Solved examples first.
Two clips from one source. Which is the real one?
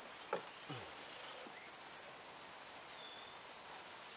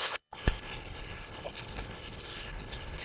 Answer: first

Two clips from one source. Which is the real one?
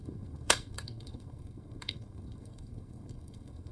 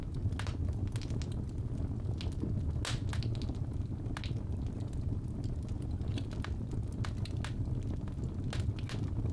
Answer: second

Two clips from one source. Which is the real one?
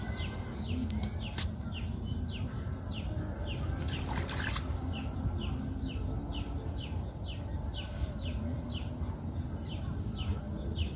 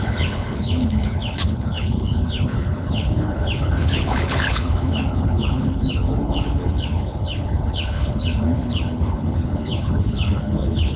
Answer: first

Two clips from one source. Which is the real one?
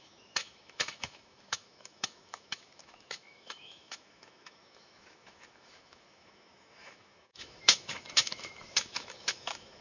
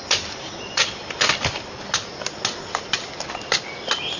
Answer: second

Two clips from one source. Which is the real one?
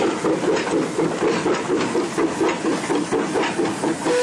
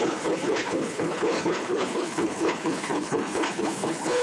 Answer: first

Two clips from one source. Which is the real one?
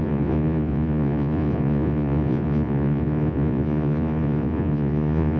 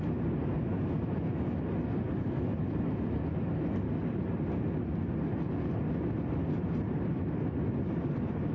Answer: second